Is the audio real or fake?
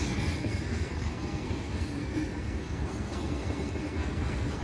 fake